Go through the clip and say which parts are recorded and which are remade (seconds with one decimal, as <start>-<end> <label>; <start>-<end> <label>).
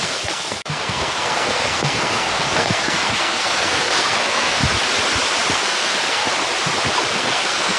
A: 0.0-4.6 remade; 4.6-5.5 recorded; 5.5-6.2 remade; 6.2-7.1 recorded; 7.1-7.8 remade